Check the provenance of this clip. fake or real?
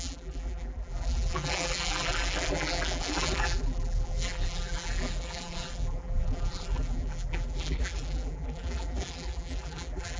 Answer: fake